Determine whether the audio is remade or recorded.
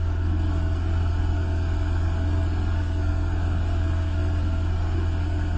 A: remade